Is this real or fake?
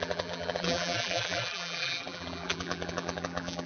fake